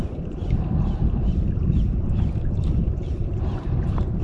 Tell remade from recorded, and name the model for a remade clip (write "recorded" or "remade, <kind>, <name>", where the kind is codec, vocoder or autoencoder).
remade, vocoder, BigVGAN v2